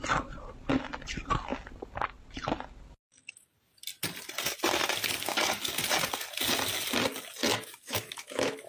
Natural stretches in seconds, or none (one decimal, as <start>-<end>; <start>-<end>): 0.0-7.5